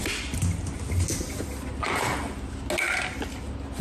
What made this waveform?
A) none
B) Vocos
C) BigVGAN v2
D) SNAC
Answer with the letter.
A